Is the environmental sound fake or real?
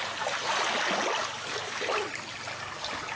real